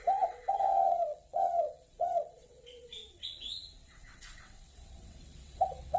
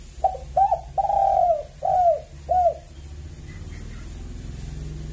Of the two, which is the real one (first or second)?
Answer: second